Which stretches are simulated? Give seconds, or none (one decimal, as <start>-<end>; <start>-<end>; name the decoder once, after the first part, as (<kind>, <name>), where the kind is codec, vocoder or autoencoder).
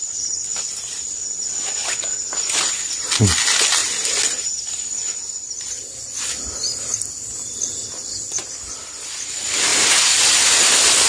9.7-10.5 (vocoder, BigVGAN v2)